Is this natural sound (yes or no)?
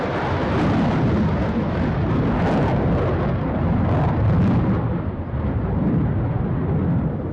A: yes